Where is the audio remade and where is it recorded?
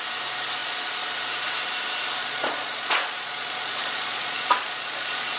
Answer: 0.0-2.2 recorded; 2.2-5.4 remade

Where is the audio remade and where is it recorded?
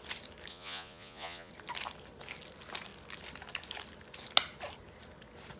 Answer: 0.0-0.5 recorded; 0.5-1.5 remade; 1.5-5.6 recorded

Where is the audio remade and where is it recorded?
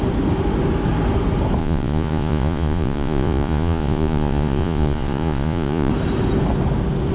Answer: 0.0-1.6 recorded; 1.6-5.9 remade; 5.9-7.1 recorded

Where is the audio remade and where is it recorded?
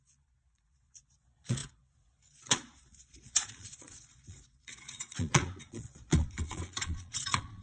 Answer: 0.0-7.6 remade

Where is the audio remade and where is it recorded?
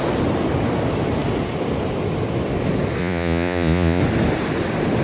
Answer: 0.0-3.0 recorded; 3.0-4.0 remade; 4.0-5.0 recorded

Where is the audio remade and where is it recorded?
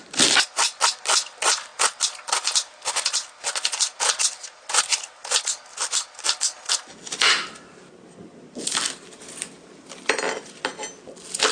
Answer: 0.0-11.5 recorded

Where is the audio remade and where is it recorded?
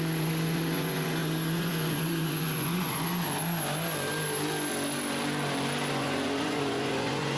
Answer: 0.0-3.1 remade; 3.1-5.9 recorded; 5.9-7.4 remade